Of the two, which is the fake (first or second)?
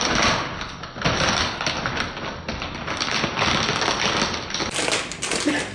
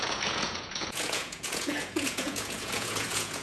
second